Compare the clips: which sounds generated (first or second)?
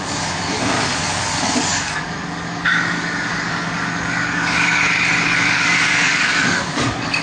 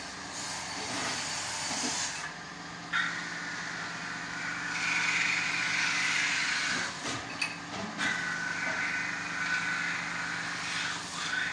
first